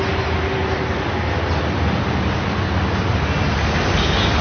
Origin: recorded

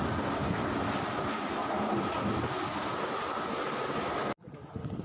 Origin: recorded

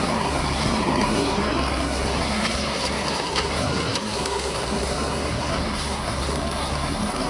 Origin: remade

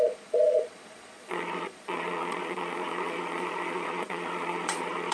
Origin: remade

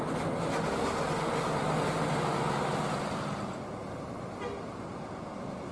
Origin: recorded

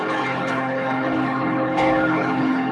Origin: remade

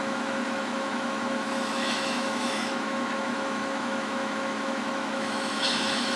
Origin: remade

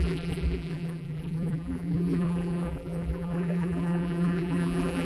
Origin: remade